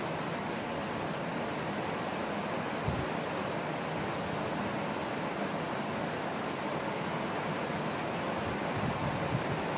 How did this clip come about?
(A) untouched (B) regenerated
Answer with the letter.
A